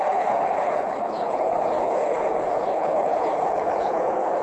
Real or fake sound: fake